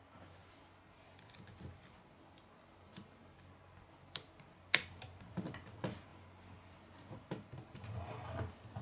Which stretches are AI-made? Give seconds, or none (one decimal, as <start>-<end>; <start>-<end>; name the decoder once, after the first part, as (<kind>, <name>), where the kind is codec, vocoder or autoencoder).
none